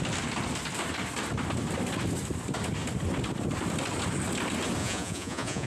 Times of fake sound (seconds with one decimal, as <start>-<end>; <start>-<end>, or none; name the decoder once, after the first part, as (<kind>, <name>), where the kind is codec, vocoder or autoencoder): 4.8-5.7 (vocoder, Vocos)